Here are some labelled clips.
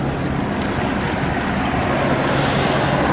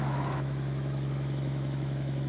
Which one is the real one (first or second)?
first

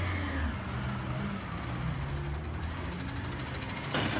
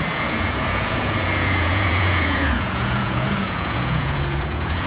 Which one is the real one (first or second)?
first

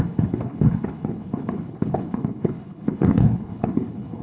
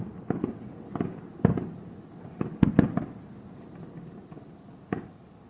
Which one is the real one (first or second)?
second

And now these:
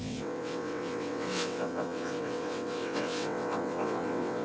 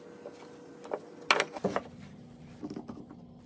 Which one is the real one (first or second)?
second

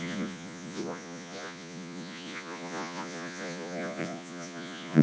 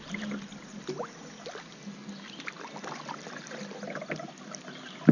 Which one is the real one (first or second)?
second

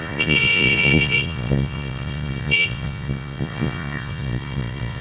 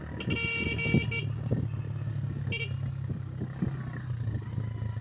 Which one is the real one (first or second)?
second